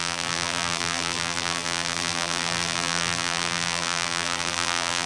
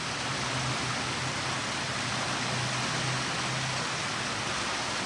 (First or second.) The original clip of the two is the second